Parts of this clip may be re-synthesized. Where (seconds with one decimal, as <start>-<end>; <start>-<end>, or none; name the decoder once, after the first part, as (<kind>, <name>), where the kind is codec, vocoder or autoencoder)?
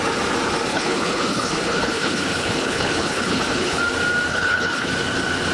0.7-3.8 (codec, HILCodec); 4.3-4.9